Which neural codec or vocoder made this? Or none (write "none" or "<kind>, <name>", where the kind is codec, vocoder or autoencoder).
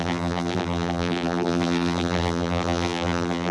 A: vocoder, BigVGAN v2